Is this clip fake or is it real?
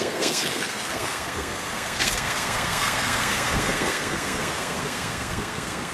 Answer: fake